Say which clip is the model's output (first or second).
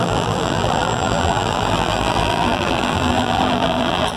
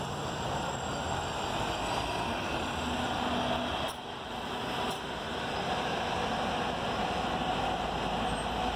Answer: first